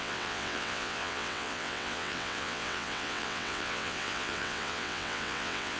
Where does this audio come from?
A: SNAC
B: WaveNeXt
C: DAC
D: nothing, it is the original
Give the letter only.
B